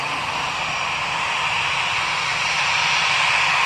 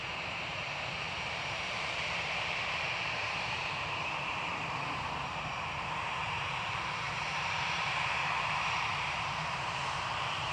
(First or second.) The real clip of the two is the first